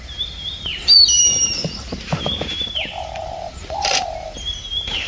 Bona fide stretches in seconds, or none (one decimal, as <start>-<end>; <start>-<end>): none